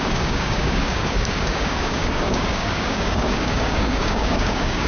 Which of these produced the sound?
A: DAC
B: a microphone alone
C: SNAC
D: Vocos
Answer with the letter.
A